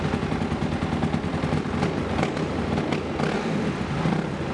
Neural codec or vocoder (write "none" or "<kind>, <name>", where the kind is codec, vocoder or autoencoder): none